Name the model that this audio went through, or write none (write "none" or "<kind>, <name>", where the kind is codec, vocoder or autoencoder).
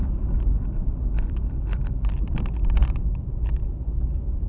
none